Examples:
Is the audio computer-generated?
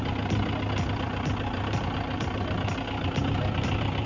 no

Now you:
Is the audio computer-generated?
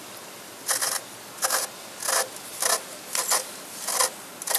no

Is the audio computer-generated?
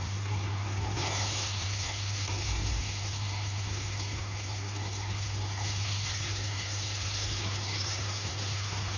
yes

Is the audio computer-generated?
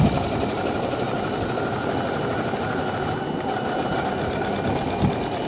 no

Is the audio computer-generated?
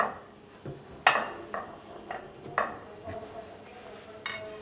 no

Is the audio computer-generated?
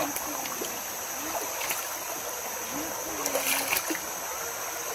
no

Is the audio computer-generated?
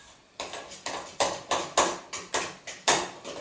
no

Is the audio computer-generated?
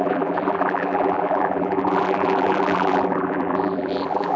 yes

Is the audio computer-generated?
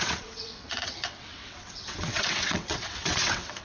yes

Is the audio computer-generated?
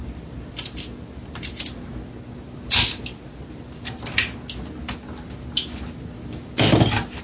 no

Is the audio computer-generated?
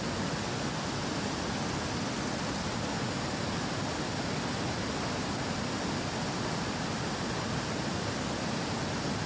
no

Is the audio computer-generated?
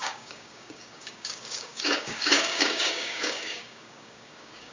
yes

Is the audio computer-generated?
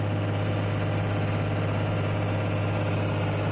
no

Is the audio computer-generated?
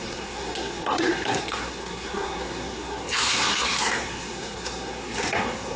yes